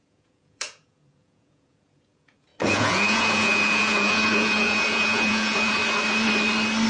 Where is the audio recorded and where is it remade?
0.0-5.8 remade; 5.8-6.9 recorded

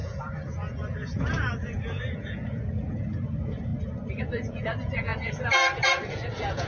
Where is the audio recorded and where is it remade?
0.0-3.7 remade; 3.7-4.2 recorded; 4.2-6.7 remade

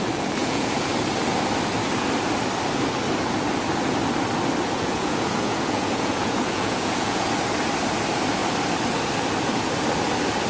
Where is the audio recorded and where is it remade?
0.0-0.4 recorded; 0.4-0.9 remade; 0.9-4.7 recorded; 4.7-7.3 remade; 7.3-10.5 recorded